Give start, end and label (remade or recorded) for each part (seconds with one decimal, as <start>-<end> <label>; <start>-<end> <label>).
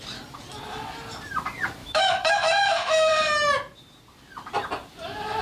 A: 0.0-1.8 recorded; 1.8-3.1 remade; 3.1-5.4 recorded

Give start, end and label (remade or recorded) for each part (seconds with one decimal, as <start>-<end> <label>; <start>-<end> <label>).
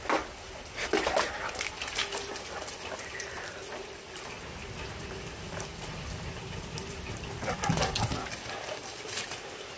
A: 0.0-9.8 recorded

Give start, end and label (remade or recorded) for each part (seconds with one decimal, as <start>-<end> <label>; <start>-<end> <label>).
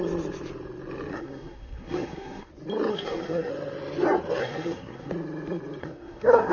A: 0.0-1.1 recorded; 1.1-2.5 remade; 2.5-2.9 recorded; 2.9-3.5 remade; 3.5-4.4 recorded; 4.4-5.1 remade; 5.1-5.8 recorded; 5.8-6.5 remade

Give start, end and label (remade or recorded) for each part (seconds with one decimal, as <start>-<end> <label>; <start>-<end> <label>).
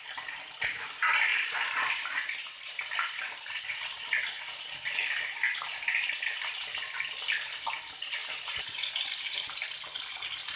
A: 0.0-8.2 recorded; 8.2-9.2 remade; 9.2-10.6 recorded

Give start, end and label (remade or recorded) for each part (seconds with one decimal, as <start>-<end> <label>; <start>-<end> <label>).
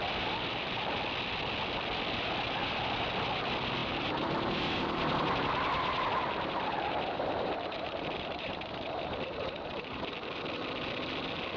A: 0.0-3.8 recorded; 3.8-5.0 remade; 5.0-6.2 recorded; 6.2-10.0 remade; 10.0-11.6 recorded